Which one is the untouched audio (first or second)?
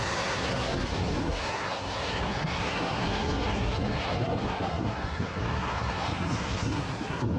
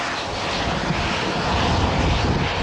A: second